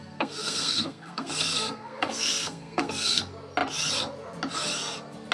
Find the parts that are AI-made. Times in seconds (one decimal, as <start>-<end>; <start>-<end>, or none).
0.0-3.2